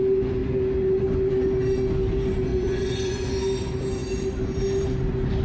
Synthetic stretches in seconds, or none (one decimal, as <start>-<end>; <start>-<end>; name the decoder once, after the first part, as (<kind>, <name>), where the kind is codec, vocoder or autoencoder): 2.5-3.3 (vocoder, Vocos)